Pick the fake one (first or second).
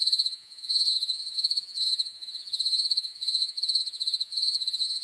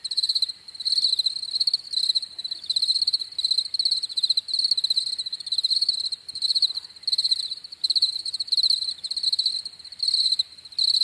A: first